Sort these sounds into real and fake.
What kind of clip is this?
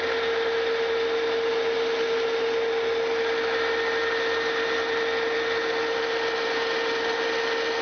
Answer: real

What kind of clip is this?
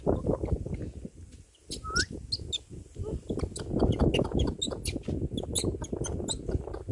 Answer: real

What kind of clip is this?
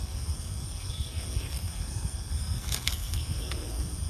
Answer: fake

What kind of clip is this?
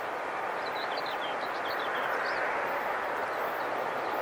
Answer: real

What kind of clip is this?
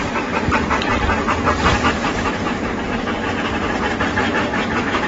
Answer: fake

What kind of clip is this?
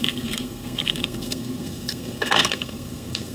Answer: fake